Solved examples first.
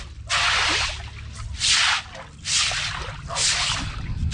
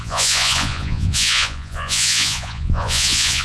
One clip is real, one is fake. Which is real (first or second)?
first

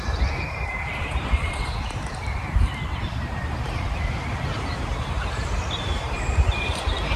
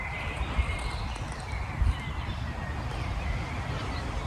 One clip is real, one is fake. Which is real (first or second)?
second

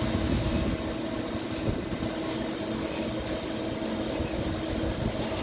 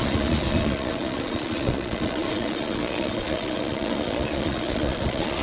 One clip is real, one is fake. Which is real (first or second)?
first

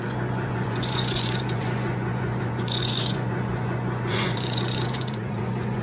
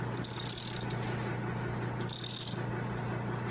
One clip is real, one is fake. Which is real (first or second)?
second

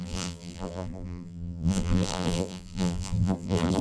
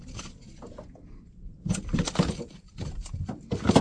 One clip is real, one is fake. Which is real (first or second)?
second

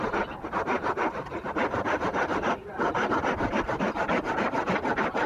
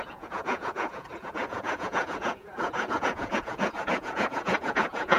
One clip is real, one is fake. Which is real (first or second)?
first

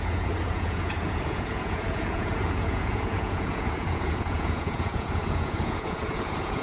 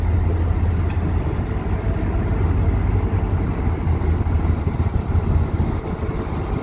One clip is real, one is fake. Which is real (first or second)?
second